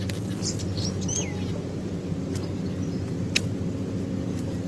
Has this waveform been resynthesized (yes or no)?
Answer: no